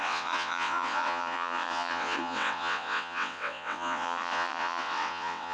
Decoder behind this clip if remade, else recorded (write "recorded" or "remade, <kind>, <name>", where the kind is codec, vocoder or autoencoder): remade, vocoder, WaveNeXt